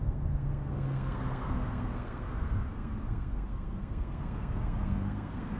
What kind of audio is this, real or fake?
fake